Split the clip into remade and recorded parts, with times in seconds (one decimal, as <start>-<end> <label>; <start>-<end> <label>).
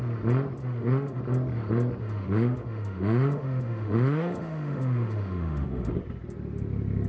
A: 0.0-0.6 recorded; 0.6-1.2 remade; 1.2-2.0 recorded; 2.0-5.9 remade; 5.9-7.1 recorded